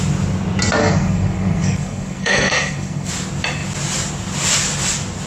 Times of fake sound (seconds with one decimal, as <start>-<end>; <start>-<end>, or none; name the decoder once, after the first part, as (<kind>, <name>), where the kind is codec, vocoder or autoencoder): 0.8-3.1 (codec, SNAC)